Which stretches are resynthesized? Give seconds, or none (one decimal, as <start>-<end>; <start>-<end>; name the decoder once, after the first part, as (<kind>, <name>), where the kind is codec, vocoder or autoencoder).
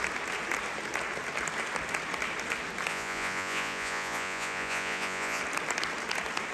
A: 2.9-5.4 (vocoder, Vocos)